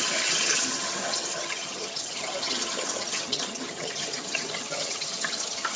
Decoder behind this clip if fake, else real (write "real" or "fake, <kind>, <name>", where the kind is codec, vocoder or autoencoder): fake, vocoder, HiFi-GAN